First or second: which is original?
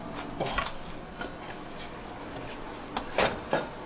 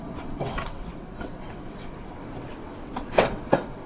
first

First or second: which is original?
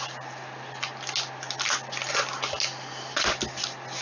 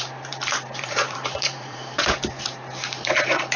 first